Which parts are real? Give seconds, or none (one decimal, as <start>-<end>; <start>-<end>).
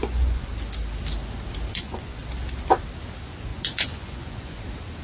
0.5-1.7; 2.2-3.5; 4.6-5.0